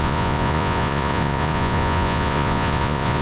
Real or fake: fake